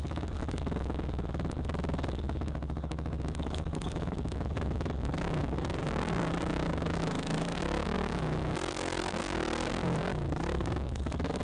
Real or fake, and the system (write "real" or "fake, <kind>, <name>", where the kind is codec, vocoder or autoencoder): fake, codec, DAC